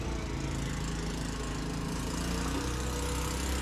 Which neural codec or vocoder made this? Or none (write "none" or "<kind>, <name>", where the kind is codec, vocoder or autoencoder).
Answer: none